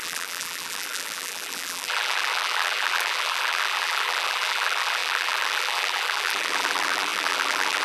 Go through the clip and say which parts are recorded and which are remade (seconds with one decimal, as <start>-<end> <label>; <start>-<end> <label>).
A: 0.0-7.8 remade

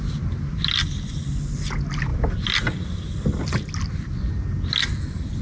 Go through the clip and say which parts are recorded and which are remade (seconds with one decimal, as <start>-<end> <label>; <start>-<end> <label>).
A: 0.0-5.4 recorded

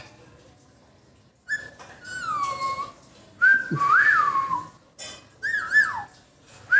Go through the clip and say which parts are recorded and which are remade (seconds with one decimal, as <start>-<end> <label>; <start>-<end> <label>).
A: 0.0-6.8 recorded